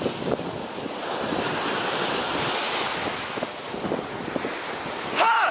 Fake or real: real